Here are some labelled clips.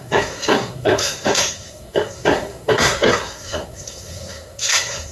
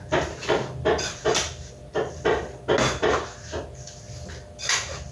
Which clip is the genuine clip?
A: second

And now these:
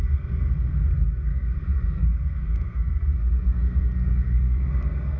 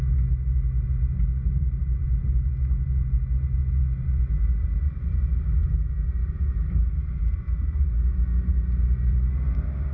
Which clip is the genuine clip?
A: second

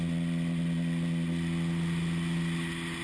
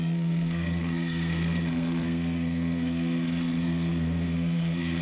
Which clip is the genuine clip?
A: first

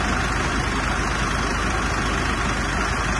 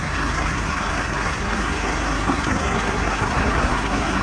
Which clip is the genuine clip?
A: first